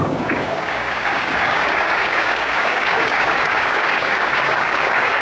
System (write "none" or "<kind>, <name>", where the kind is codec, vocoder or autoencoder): codec, DAC